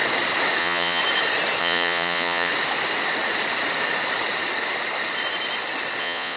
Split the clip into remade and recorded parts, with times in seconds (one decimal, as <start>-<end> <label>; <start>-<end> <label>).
0.0-0.6 recorded; 0.6-1.0 remade; 1.0-1.6 recorded; 1.6-2.5 remade; 2.5-6.0 recorded; 6.0-6.4 remade

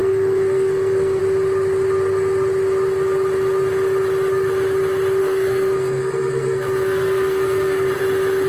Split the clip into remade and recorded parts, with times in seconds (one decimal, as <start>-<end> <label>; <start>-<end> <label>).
0.0-1.2 remade; 1.2-5.2 recorded; 5.2-7.9 remade; 7.9-8.5 recorded

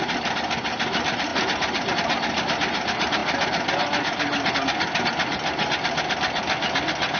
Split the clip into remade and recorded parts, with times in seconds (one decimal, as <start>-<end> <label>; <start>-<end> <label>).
0.0-7.2 recorded

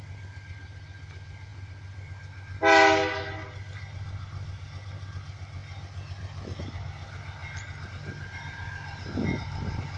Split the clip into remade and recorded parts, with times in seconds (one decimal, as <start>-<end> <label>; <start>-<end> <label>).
0.0-10.0 recorded

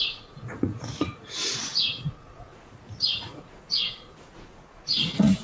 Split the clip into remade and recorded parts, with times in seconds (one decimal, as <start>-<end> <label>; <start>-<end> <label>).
0.0-5.4 remade